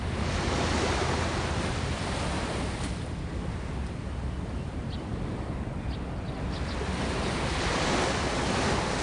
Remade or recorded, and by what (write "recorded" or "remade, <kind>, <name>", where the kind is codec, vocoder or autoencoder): recorded